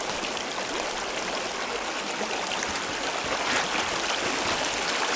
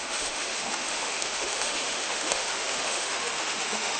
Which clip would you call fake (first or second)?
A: second